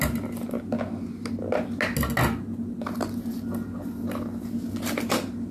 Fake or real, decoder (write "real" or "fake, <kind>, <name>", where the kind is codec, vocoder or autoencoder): real